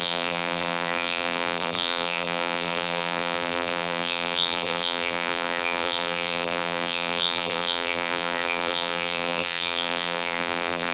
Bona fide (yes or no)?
no